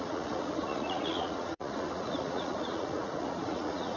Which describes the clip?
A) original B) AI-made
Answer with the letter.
B